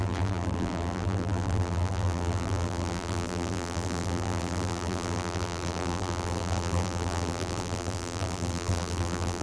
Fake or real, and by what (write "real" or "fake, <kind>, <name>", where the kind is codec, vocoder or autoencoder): fake, vocoder, BigVGAN v2